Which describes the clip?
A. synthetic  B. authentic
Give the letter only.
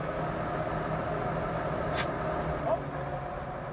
B